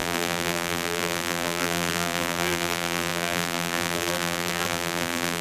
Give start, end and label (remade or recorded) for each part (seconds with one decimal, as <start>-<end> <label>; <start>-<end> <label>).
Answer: 0.0-5.4 remade